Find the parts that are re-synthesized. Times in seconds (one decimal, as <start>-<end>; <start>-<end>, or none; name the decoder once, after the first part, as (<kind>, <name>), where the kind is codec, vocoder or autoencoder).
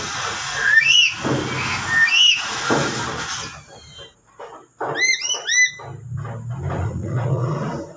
0.0-1.0 (vocoder, Vocos); 2.3-3.0; 6.7-8.0